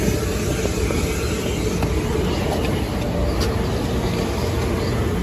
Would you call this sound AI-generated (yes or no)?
no